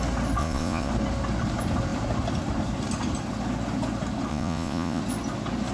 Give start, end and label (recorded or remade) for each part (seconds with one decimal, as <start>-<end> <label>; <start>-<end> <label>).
0.0-0.4 recorded; 0.4-0.9 remade; 0.9-4.3 recorded; 4.3-5.0 remade; 5.0-5.7 recorded